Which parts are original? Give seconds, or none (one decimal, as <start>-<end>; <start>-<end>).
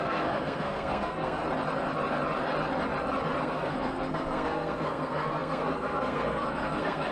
1.4-3.4